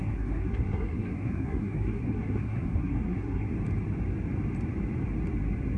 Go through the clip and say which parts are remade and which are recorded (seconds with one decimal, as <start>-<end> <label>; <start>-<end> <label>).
0.0-3.5 remade; 3.5-5.8 recorded